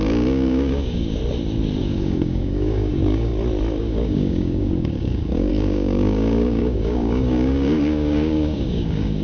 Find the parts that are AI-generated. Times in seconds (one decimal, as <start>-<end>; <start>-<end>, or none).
0.0-1.2; 1.8-3.3; 3.8-9.2